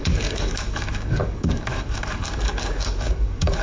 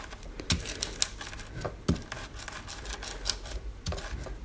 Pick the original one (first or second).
second